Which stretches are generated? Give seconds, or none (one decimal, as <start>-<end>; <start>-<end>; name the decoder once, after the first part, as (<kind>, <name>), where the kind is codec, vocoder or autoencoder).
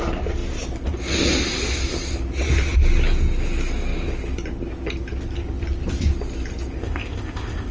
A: 6.8-7.7 (codec, ZipCodec)